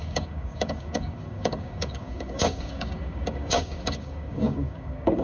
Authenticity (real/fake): fake